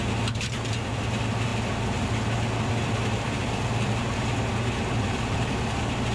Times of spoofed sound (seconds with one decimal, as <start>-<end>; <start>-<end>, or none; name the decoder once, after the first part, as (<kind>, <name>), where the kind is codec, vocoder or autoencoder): none